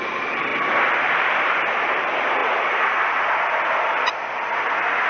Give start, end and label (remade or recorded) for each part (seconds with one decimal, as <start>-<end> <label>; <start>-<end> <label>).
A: 0.0-2.4 remade; 2.4-4.5 recorded; 4.5-5.1 remade